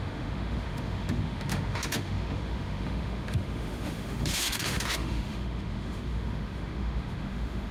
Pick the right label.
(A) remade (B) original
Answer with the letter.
A